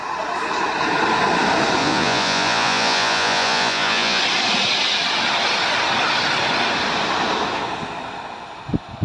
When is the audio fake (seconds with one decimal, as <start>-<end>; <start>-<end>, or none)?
1.8-4.2